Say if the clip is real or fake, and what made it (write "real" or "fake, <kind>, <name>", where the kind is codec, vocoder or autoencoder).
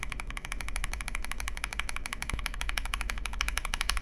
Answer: fake, autoencoder, DAC-VAE